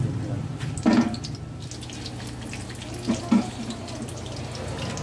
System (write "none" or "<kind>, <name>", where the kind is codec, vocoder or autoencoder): none